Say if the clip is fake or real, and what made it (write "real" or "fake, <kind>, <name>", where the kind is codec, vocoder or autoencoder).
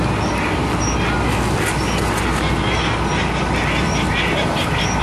real